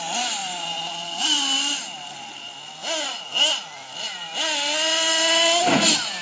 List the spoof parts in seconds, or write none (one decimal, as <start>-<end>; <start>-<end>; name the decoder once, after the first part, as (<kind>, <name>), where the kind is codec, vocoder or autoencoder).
none